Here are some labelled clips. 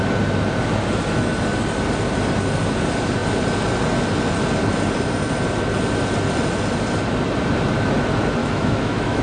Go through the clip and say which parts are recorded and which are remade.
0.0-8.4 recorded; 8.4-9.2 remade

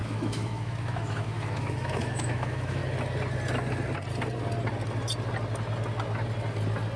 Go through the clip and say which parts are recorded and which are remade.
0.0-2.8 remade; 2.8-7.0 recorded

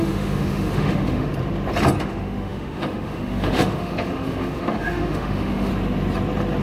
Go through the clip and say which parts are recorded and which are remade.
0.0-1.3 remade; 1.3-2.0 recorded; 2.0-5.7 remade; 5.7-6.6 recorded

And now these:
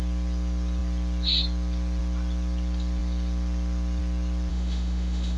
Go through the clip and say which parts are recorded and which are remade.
0.0-4.5 recorded; 4.5-5.4 remade

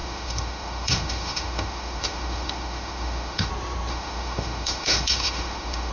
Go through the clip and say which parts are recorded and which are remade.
0.0-3.5 remade; 3.5-3.9 recorded; 3.9-5.9 remade

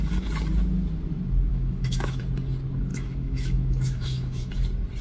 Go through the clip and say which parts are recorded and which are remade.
0.0-1.5 recorded; 1.5-2.2 remade; 2.2-2.9 recorded; 2.9-4.5 remade; 4.5-5.0 recorded

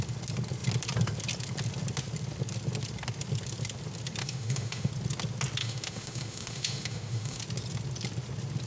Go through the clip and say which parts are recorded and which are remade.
0.0-4.2 recorded; 4.2-4.9 remade; 4.9-5.6 recorded; 5.6-7.4 remade; 7.4-8.7 recorded